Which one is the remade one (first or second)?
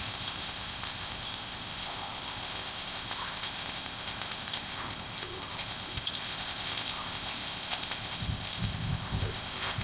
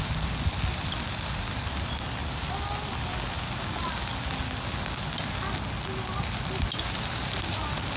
first